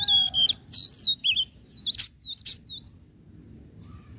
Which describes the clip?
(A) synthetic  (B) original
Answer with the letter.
B